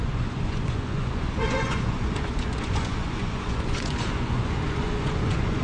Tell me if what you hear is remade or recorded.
remade